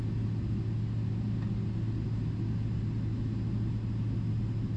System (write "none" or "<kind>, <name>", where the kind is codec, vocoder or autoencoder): none